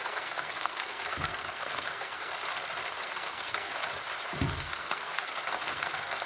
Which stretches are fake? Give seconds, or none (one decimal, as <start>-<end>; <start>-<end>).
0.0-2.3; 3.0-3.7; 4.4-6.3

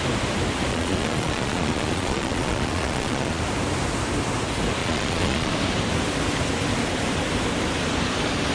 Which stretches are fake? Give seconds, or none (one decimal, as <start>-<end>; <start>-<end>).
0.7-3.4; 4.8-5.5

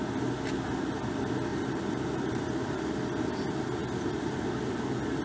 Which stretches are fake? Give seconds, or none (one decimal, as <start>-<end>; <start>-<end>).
1.5-2.8

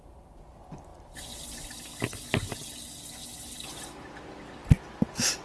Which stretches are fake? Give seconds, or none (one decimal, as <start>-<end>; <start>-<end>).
none